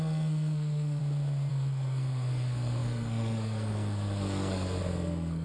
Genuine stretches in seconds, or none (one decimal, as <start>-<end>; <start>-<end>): 1.0-1.5